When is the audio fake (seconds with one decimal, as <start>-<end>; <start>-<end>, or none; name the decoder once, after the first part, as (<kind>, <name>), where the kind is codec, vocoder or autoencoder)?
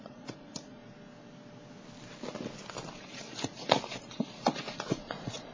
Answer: 0.0-0.8 (vocoder, Vocos); 3.0-5.5